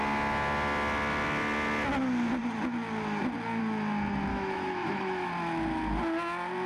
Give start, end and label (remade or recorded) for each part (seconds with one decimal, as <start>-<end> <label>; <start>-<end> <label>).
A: 0.0-4.3 recorded; 4.3-5.3 remade; 5.3-6.7 recorded